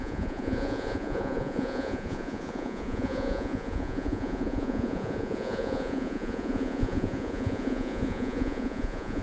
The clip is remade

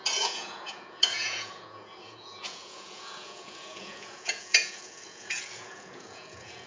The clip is remade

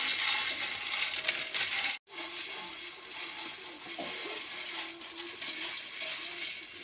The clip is recorded